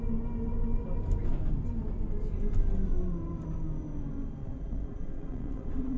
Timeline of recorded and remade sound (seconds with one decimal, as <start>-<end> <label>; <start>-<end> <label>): 0.0-4.4 recorded; 4.4-6.0 remade